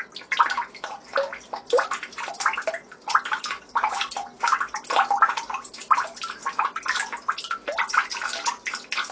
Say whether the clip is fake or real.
real